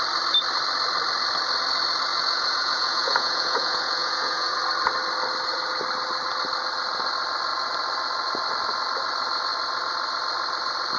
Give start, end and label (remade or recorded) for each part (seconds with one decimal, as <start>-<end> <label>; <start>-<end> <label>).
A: 0.0-2.1 recorded; 2.1-4.6 remade; 4.6-11.0 recorded